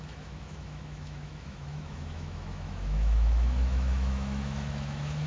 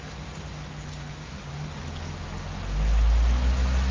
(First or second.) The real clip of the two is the second